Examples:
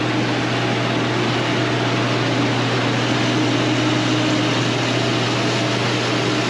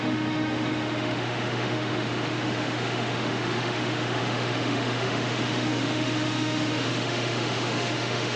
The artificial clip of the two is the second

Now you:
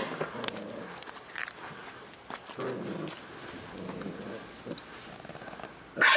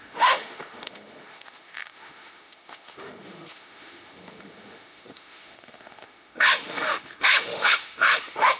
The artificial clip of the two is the second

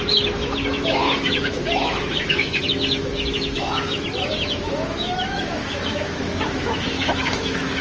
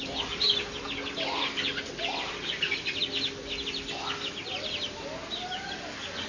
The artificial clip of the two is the first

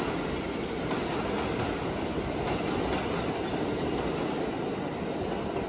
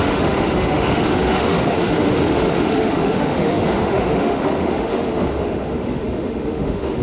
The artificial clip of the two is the second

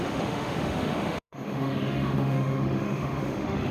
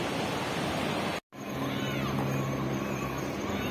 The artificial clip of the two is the first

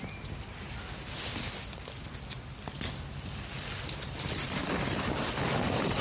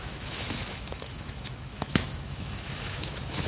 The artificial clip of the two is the second